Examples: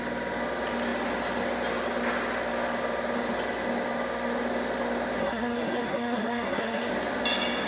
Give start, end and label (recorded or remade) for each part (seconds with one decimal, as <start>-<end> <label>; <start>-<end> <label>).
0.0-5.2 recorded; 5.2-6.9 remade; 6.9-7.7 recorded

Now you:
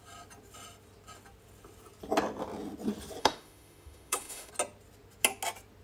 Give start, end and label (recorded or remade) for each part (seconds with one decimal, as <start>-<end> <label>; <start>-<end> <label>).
0.0-3.2 recorded; 3.2-4.5 remade; 4.5-5.8 recorded

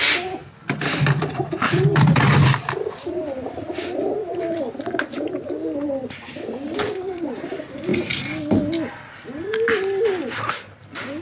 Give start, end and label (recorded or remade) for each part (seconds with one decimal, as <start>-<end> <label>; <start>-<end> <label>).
0.0-7.9 remade; 7.9-10.5 recorded; 10.5-11.2 remade